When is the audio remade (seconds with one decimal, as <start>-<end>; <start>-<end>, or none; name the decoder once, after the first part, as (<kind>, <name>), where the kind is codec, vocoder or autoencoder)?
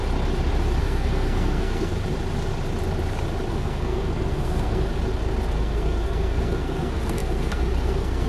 0.8-1.9 (codec, SNAC); 3.5-4.9; 5.5-8.3